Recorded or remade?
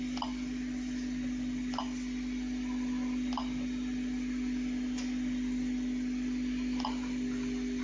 recorded